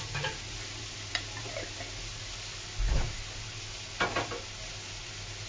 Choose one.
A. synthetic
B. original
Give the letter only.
B